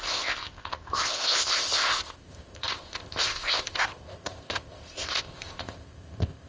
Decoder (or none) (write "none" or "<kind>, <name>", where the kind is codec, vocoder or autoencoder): codec, ZipCodec